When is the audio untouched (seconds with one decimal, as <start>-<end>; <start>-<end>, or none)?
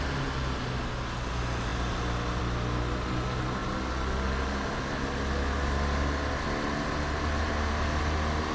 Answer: 0.0-8.5